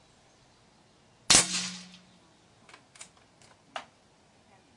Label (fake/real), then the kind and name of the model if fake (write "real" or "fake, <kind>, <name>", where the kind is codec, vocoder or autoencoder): real